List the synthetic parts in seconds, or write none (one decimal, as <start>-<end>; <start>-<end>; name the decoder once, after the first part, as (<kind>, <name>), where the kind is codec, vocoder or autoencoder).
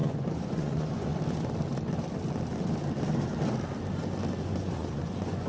0.0-1.1 (vocoder, Vocos); 4.4-5.5